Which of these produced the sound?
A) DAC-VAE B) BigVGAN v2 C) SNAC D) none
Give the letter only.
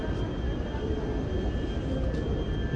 D